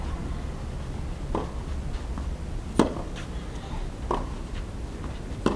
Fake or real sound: real